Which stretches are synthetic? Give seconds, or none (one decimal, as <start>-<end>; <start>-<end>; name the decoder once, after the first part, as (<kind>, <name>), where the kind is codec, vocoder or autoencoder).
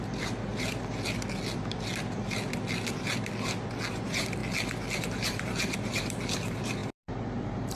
0.0-0.5 (vocoder, BigVGAN v2); 3.9-4.4; 5.0-7.8